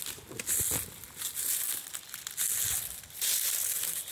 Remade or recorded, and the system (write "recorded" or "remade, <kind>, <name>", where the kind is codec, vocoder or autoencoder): recorded